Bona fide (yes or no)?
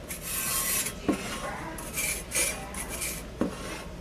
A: yes